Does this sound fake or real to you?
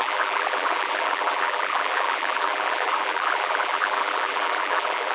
fake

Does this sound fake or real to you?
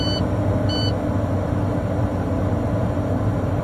real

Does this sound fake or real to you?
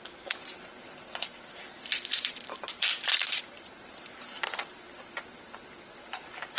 fake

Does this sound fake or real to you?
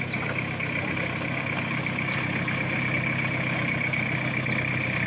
real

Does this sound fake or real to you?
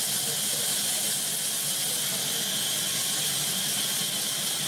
real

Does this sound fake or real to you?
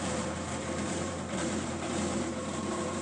fake